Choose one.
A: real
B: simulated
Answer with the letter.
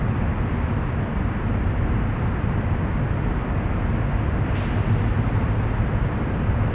A